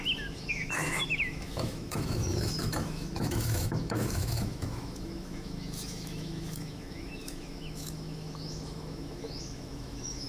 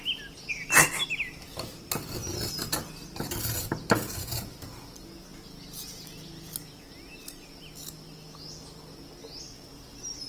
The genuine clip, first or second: second